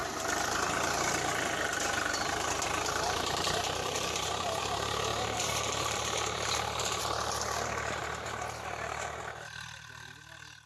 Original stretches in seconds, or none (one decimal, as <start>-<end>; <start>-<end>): 4.6-5.1; 7.0-8.0; 9.2-10.7